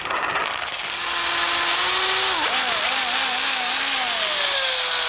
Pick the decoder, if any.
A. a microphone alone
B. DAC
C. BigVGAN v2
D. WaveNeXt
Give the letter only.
A